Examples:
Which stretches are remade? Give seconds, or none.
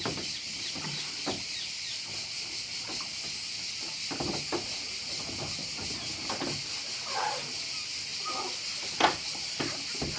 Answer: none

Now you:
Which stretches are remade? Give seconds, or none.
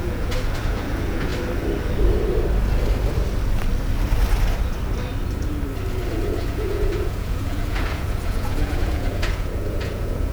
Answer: 0.0-1.3 (vocoder, Vocos); 6.1-10.3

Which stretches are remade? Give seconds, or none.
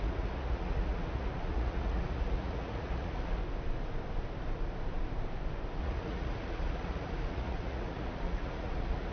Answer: 0.0-3.4 (vocoder, Vocos); 5.8-9.1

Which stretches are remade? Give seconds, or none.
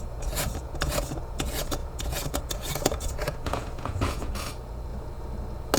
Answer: 0.0-4.9 (vocoder, Vocos)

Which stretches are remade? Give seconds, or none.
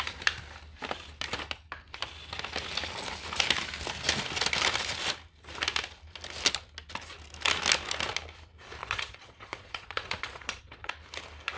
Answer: 8.8-10.9 (vocoder, Vocos)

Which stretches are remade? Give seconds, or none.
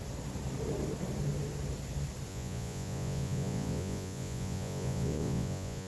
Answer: 2.3-5.9 (vocoder, Vocos)